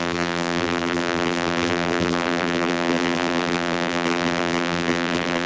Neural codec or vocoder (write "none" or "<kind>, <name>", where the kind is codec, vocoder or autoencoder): vocoder, BigVGAN v2